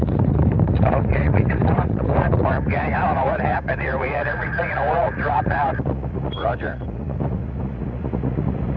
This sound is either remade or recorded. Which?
remade